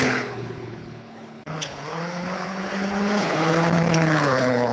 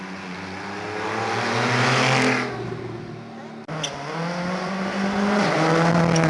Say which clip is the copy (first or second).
first